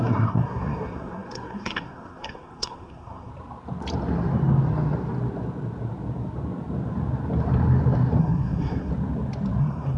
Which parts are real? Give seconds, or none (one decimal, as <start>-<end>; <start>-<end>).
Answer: 3.3-8.2; 8.9-9.6